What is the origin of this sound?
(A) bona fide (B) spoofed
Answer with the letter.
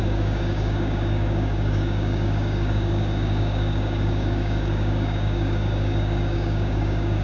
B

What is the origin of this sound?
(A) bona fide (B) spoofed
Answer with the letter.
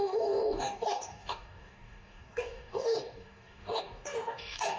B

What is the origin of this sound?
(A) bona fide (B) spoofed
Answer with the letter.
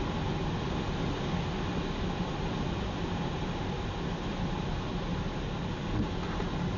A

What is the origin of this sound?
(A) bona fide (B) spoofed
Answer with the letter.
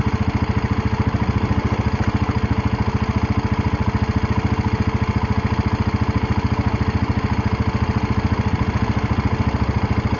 A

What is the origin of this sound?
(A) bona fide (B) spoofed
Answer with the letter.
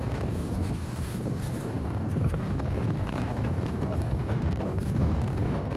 B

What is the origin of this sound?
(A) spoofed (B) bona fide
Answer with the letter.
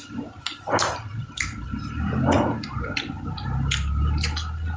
B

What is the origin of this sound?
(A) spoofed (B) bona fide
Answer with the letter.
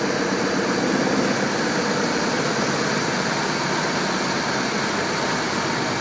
B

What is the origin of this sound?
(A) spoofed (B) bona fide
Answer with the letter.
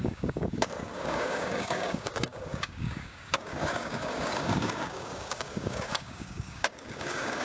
A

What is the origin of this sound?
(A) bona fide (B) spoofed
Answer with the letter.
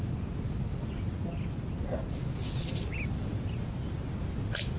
A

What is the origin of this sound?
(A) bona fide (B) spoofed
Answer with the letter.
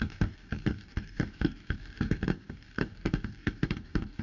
B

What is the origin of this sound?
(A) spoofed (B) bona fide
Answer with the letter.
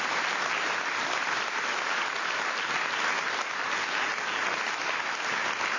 B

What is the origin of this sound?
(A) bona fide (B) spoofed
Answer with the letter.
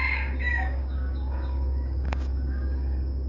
B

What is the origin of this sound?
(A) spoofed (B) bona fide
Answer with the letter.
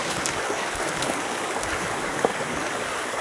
A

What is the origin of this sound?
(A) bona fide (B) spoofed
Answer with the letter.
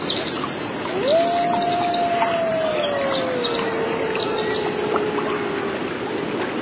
A